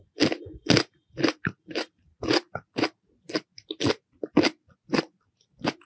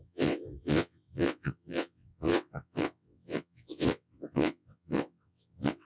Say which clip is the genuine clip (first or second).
first